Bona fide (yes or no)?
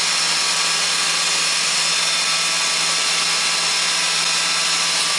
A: yes